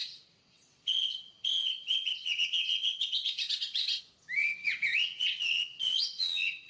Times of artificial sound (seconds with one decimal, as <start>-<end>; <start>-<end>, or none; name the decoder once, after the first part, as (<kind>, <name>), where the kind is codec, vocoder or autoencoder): 0.0-4.0 (vocoder, WaveNeXt); 4.4-6.7